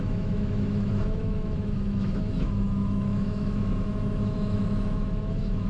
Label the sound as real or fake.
fake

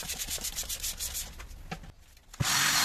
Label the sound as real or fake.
real